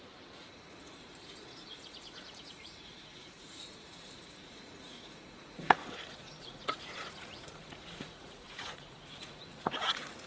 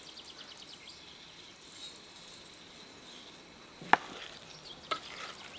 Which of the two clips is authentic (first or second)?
second